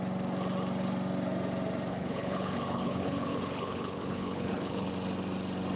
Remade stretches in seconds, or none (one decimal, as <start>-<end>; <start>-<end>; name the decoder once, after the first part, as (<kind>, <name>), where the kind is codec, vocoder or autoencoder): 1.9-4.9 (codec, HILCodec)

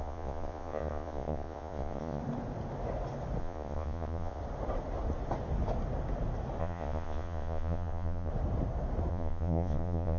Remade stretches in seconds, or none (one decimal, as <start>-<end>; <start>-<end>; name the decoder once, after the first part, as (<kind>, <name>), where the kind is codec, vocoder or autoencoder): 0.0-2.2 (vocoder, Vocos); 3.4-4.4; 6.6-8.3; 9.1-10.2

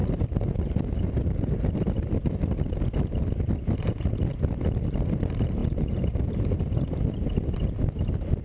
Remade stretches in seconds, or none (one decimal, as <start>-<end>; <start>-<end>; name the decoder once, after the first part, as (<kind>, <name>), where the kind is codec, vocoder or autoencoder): 5.6-6.6 (vocoder, BigVGAN v2)

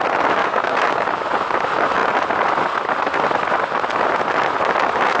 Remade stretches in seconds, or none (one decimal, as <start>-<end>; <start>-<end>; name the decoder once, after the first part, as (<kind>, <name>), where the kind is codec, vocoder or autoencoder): 0.4-1.2 (codec, DAC)

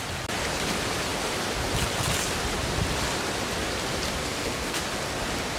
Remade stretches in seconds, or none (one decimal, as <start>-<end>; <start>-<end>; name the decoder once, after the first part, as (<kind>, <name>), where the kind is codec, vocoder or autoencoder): 4.2-4.8 (codec, SNAC)